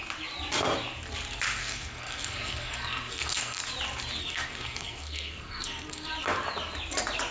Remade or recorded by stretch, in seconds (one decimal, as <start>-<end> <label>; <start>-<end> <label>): 0.0-1.6 recorded; 1.6-3.6 remade; 3.6-4.2 recorded; 4.2-6.1 remade; 6.1-7.3 recorded